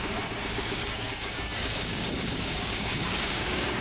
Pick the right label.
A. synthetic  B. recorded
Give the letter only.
A